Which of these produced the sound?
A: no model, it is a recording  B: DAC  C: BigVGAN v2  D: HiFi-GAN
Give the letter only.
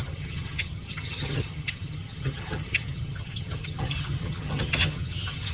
D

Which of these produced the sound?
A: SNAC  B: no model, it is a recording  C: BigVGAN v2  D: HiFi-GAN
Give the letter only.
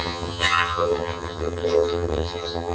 D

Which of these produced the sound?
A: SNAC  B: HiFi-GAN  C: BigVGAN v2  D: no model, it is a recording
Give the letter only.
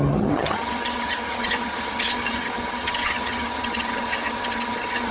B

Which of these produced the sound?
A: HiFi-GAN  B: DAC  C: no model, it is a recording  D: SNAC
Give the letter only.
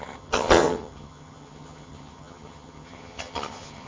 A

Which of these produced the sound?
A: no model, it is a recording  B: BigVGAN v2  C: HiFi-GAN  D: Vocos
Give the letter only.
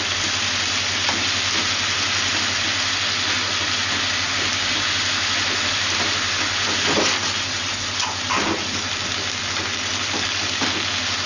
A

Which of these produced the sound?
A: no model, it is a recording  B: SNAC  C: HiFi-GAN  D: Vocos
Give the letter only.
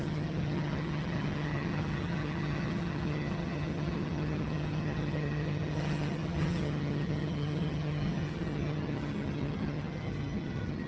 C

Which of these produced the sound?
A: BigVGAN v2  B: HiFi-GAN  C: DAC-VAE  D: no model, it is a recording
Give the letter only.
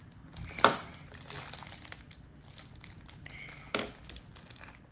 D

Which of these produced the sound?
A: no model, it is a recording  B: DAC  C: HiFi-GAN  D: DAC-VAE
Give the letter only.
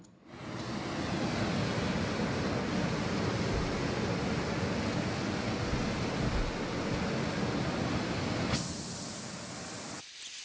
A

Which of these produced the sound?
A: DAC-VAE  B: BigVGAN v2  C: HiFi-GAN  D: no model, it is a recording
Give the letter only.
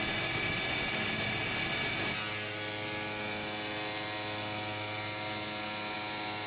D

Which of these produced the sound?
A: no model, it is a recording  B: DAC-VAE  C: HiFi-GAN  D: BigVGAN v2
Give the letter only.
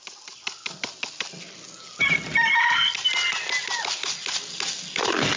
A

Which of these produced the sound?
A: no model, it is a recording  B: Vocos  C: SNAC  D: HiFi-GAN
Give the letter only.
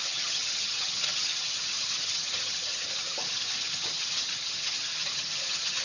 D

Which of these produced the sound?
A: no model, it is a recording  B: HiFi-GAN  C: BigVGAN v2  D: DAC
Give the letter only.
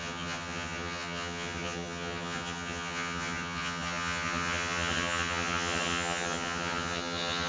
B